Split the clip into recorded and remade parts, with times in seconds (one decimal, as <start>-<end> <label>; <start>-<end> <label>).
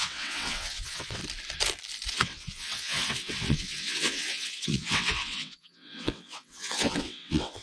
0.0-1.2 remade; 1.2-2.1 recorded; 2.1-7.6 remade